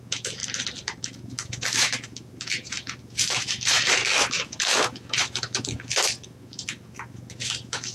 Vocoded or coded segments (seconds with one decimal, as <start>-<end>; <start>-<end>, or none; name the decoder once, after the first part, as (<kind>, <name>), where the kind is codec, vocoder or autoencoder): 0.0-0.4 (autoencoder, DAC-VAE); 1.0-7.9